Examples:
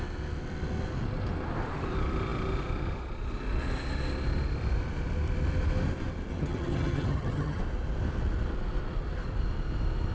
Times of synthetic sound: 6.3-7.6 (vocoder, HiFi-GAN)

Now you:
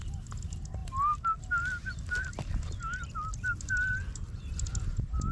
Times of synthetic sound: none

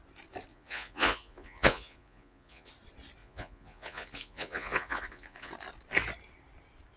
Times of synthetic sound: 0.5-2.7 (vocoder, Vocos); 3.2-5.5